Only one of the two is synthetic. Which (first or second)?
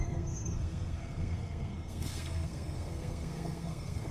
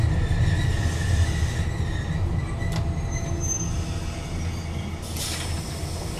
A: first